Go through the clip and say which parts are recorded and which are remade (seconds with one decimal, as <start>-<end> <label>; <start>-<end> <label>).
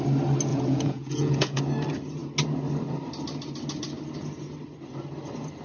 0.0-0.5 recorded; 0.5-1.6 remade; 1.6-5.6 recorded